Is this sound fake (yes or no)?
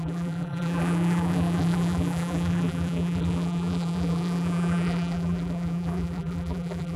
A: yes